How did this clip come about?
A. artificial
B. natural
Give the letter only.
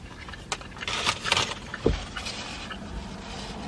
B